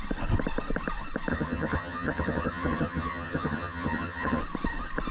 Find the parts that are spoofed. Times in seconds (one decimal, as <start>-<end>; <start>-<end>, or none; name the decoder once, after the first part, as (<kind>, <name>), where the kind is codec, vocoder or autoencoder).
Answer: 1.3-4.4 (vocoder, HiFi-GAN)